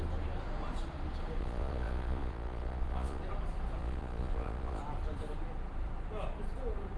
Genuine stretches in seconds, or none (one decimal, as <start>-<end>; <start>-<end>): 0.0-1.4; 3.2-3.8; 4.8-7.0